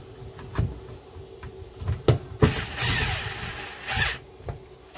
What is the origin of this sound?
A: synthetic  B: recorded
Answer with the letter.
B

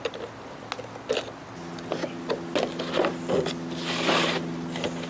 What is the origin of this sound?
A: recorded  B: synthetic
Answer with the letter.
A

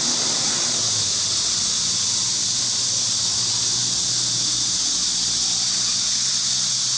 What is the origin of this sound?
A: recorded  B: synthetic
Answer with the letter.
A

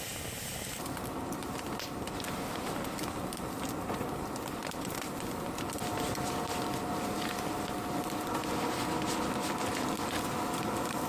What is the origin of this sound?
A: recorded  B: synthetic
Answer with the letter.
A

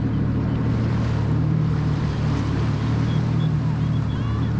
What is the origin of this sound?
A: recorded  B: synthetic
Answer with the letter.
A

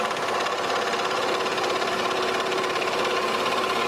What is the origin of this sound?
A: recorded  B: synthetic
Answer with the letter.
B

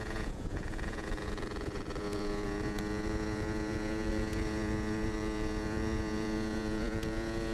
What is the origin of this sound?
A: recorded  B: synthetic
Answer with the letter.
B